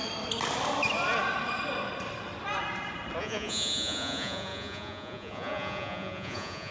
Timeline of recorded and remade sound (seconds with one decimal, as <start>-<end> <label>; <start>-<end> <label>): 0.0-3.2 recorded; 3.2-6.7 remade